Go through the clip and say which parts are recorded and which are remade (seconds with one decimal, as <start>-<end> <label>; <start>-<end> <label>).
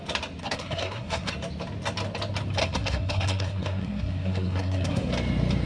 0.0-0.4 recorded; 0.4-1.3 remade; 1.3-2.6 recorded; 2.6-5.1 remade; 5.1-5.7 recorded